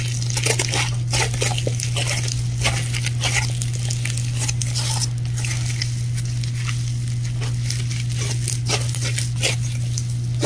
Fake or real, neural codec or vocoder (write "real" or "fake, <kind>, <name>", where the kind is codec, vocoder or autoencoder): real